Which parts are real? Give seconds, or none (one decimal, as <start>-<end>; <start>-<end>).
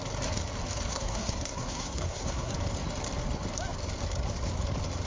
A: 0.0-0.9; 2.5-5.1